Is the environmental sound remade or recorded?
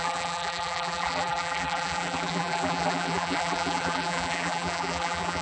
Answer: remade